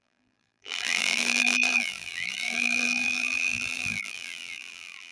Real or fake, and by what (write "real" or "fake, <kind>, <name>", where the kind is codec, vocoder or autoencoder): fake, vocoder, BigVGAN v2